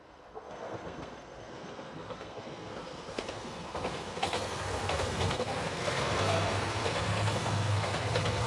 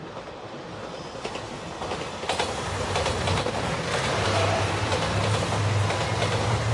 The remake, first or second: first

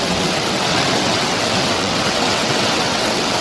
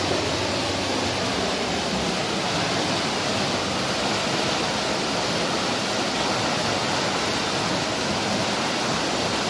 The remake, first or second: first